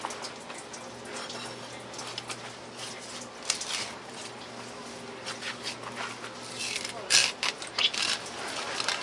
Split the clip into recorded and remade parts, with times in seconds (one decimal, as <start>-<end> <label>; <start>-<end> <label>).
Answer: 0.0-9.0 recorded